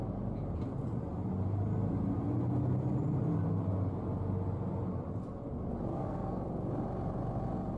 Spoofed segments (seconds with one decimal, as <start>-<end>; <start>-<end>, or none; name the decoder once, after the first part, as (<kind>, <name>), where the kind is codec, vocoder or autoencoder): 5.9-6.4 (codec, SNAC)